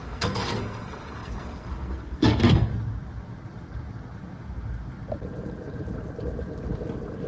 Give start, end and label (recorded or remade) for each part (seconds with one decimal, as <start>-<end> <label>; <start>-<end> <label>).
0.0-2.7 remade; 2.7-7.3 recorded